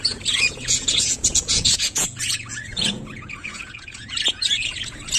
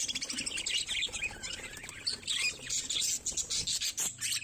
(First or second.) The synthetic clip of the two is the first